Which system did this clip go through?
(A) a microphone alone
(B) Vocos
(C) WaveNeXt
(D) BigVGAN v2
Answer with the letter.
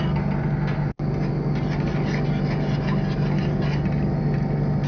A